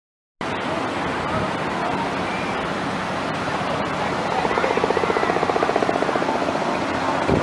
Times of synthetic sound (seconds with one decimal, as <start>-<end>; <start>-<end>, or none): none

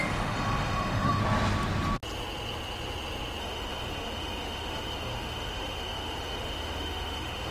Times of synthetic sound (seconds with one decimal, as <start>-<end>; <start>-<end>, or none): 0.0-1.2; 3.4-7.5

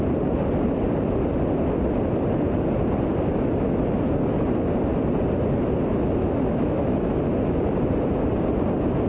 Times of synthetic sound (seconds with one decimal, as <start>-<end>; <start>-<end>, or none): 5.9-7.1

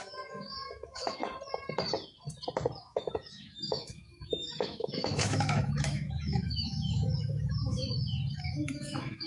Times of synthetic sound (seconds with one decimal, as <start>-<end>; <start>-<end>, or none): 0.0-1.2; 2.8-7.8; 8.3-9.3